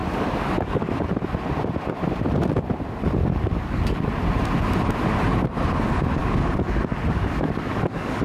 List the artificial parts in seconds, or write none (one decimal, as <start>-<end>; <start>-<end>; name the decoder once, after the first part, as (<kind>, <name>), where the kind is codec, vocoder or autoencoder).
0.0-1.1 (codec, DAC); 3.2-4.0; 6.2-8.2